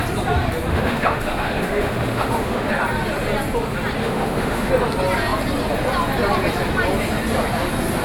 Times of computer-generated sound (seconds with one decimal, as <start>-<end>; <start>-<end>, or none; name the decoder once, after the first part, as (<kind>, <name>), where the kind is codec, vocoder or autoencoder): 0.7-2.7 (autoencoder, DAC-VAE); 4.0-4.7